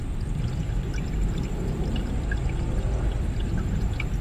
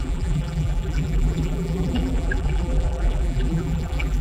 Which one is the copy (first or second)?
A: second